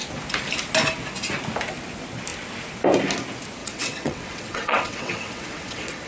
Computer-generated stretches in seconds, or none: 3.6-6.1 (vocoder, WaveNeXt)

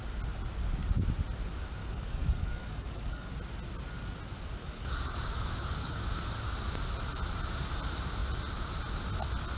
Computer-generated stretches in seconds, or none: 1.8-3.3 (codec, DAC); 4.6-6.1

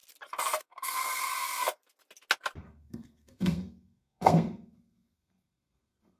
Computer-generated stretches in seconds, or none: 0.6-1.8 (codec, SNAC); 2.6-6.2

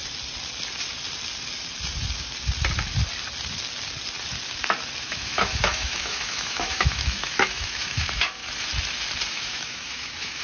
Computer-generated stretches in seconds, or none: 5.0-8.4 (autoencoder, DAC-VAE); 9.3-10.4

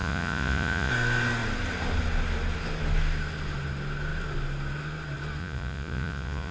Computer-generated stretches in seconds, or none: 0.0-0.9 (vocoder, Vocos); 5.4-6.5

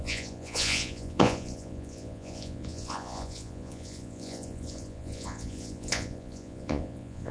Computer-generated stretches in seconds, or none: 0.0-7.3 (vocoder, Vocos)